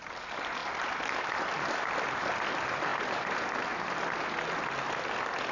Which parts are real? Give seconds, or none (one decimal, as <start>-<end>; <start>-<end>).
0.0-5.5